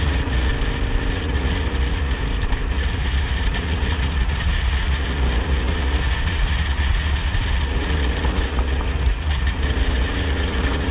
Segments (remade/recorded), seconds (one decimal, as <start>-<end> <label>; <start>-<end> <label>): 0.0-0.5 remade; 0.5-1.1 recorded; 1.1-2.2 remade; 2.2-2.7 recorded; 2.7-10.9 remade